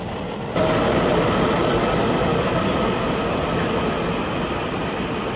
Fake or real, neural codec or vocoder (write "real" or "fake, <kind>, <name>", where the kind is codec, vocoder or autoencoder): real